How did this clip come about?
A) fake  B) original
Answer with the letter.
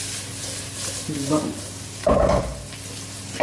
A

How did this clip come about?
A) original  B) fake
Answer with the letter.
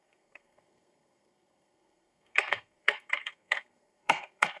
B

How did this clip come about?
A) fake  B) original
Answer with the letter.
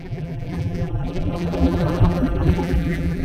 A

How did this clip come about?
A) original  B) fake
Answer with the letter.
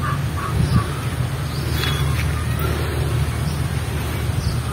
A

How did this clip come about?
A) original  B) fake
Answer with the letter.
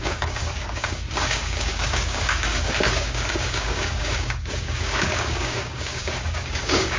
B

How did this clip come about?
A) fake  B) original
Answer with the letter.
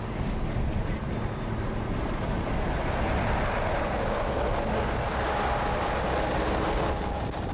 B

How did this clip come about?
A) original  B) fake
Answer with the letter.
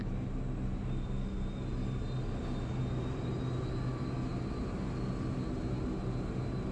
A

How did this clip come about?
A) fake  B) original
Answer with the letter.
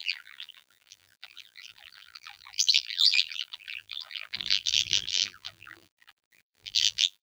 A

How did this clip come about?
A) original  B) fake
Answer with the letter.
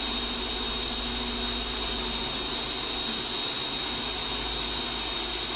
A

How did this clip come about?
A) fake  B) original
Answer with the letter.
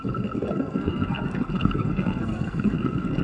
A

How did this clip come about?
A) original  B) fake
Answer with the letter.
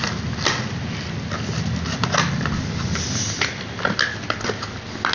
A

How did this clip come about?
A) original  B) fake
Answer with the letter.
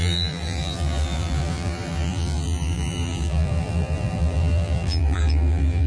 B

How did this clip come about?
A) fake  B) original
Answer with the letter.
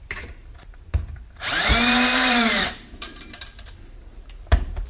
A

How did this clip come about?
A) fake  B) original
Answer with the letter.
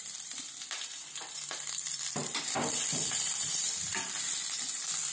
A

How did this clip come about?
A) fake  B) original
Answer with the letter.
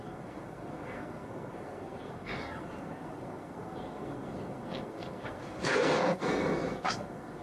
A